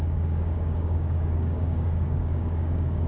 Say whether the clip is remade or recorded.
remade